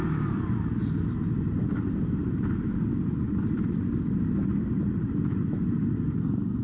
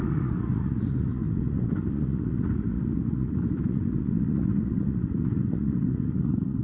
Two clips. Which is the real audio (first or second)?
first